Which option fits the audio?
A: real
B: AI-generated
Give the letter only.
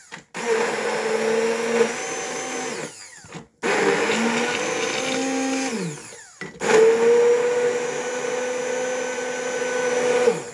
A